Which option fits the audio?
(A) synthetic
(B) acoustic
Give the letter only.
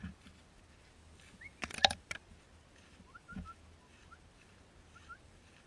B